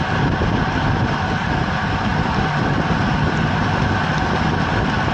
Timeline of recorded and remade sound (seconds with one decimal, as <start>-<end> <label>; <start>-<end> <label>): 0.0-5.1 recorded